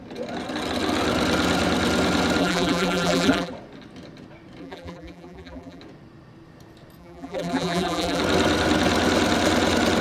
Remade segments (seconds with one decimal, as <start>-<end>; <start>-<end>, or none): 2.4-3.5; 4.6-5.8; 7.0-8.2